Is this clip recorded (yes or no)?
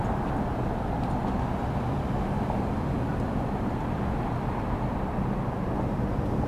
yes